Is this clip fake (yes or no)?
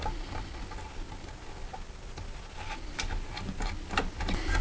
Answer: no